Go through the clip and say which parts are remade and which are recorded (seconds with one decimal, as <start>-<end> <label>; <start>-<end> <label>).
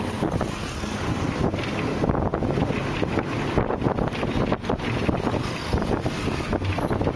0.0-7.2 recorded